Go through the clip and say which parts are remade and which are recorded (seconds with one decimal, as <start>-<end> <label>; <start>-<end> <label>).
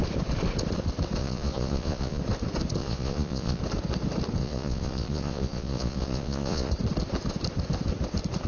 0.0-1.2 recorded; 1.2-2.2 remade; 2.2-2.8 recorded; 2.8-3.6 remade; 3.6-4.4 recorded; 4.4-6.7 remade; 6.7-8.5 recorded